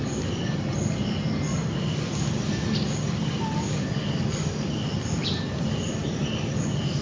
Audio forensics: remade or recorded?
recorded